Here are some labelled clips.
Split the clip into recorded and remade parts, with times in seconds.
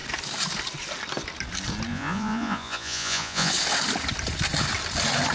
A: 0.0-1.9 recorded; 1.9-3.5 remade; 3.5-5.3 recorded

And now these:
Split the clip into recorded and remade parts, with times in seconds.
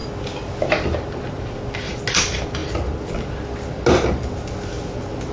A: 0.0-5.3 recorded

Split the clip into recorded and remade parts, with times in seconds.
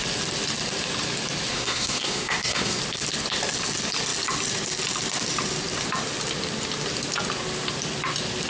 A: 0.0-1.5 recorded; 1.5-2.8 remade; 2.8-8.5 recorded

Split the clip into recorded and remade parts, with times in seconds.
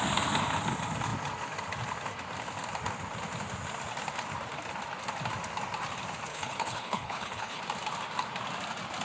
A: 0.0-6.3 recorded; 6.3-7.6 remade; 7.6-9.0 recorded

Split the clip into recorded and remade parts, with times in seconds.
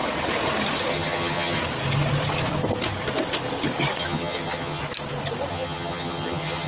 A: 0.0-0.9 recorded; 0.9-1.6 remade; 1.6-4.0 recorded; 4.0-4.8 remade; 4.8-5.5 recorded; 5.5-6.7 remade